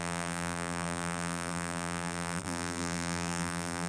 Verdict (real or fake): fake